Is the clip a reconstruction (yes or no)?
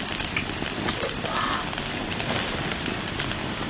yes